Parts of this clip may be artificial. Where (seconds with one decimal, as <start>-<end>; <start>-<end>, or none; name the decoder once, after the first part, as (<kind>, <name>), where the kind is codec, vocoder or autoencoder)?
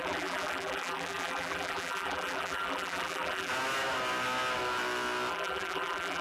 0.0-3.5 (vocoder, BigVGAN v2); 5.3-6.2